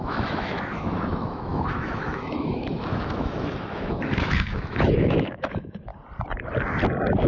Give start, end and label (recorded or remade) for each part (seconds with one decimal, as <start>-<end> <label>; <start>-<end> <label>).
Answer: 0.0-5.9 remade; 5.9-7.3 recorded